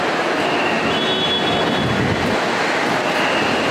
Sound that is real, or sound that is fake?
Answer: real